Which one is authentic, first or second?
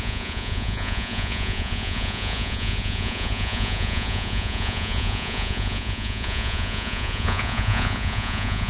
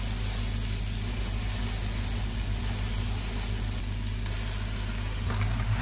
second